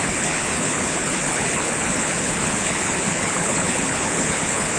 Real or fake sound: fake